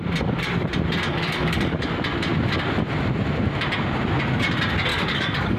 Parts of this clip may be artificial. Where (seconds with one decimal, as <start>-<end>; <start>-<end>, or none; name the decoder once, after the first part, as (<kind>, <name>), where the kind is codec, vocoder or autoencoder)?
1.1-1.9 (codec, DAC); 4.9-5.6